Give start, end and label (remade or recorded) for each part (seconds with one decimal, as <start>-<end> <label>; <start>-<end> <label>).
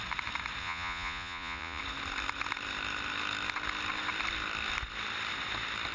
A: 0.0-0.6 recorded; 0.6-1.8 remade; 1.8-5.9 recorded